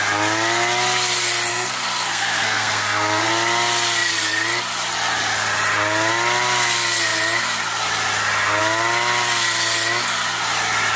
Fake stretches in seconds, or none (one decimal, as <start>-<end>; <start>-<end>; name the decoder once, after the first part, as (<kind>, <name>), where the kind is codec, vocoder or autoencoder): 1.5-3.3 (codec, SNAC)

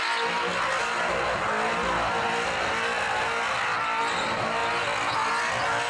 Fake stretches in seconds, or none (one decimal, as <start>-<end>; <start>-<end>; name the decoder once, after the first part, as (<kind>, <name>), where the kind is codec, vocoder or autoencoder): none

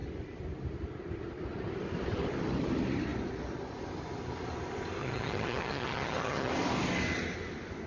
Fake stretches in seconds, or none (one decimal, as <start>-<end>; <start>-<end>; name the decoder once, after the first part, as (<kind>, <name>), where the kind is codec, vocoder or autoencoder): 5.0-6.5 (vocoder, HiFi-GAN)

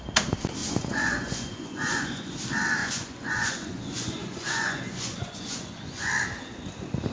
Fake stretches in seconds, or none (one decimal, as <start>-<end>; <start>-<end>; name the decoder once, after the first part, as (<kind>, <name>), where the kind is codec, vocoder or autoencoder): 0.6-2.4 (vocoder, Vocos); 2.8-6.1